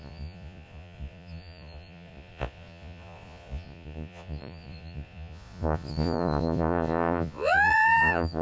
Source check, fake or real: fake